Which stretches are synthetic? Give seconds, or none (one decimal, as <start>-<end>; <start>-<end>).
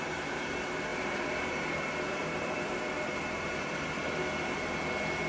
0.9-4.1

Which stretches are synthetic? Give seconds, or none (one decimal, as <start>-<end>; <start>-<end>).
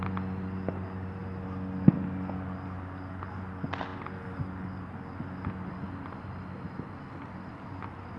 none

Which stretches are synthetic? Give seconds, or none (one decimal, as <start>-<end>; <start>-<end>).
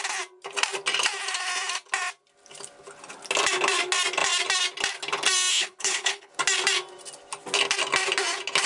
5.5-6.3